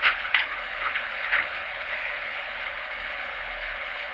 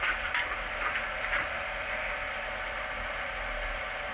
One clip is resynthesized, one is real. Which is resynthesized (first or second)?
first